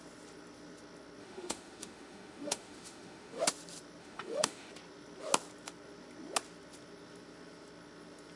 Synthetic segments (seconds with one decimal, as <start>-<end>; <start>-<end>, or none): 1.2-3.4; 4.0-4.7